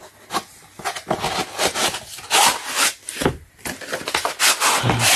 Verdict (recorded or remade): recorded